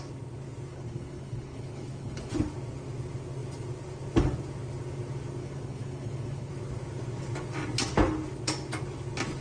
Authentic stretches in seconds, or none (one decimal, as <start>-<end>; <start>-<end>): 0.0-0.7; 2.3-5.4; 6.5-9.4